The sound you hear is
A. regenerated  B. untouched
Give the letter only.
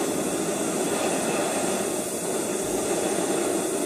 B